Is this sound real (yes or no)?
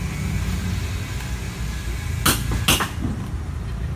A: yes